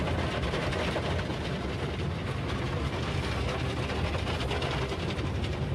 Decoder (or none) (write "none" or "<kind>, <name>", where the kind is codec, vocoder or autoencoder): none